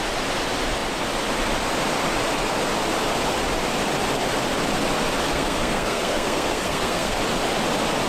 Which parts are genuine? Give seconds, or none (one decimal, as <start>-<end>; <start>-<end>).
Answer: 0.0-5.2; 7.2-8.1